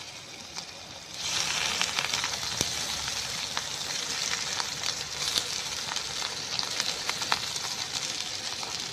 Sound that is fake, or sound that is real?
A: fake